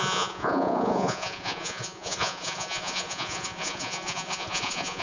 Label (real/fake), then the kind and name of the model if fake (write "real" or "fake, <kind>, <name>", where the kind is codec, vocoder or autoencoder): fake, vocoder, Vocos